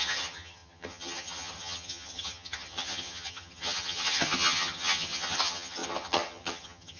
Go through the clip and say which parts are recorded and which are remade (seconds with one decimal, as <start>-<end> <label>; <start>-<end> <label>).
0.0-7.0 remade